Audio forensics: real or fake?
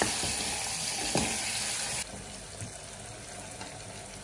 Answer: real